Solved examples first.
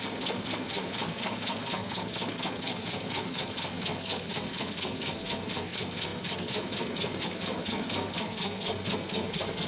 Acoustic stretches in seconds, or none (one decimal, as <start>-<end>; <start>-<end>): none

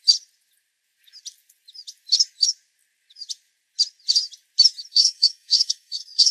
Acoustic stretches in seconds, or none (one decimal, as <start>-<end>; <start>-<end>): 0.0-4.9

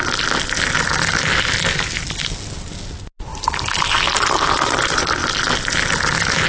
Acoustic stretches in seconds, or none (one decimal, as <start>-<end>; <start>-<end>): 0.0-6.5